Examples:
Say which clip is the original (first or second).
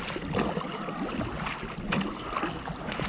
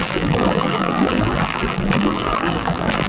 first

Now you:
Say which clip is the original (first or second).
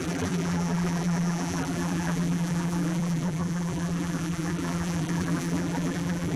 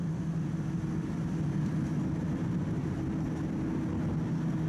second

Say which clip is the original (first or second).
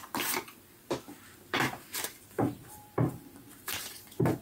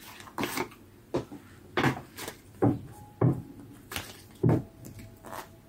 second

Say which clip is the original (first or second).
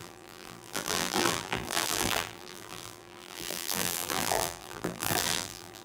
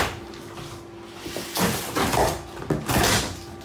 second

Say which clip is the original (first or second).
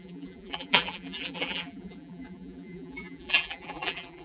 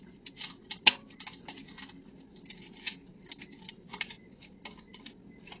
second